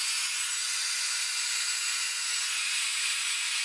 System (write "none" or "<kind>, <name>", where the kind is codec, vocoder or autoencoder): vocoder, Vocos